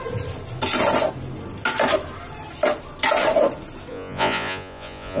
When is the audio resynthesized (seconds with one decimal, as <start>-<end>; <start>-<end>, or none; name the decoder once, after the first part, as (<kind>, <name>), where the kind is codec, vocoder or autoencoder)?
3.9-5.2 (vocoder, Vocos)